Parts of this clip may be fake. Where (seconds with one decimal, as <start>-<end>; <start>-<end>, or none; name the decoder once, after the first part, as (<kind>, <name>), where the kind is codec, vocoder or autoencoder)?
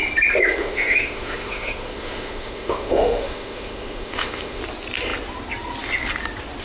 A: 0.6-4.6 (autoencoder, DAC-VAE)